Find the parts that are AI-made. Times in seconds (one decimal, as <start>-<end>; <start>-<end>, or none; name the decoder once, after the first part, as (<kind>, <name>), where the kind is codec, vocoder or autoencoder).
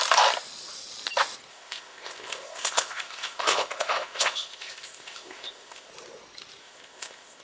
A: 1.5-5.9 (codec, ZipCodec); 6.6-7.4